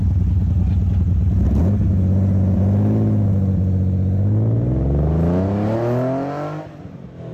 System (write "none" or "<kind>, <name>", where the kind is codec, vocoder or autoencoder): none